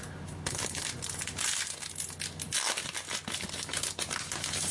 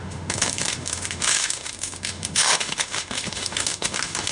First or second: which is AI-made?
second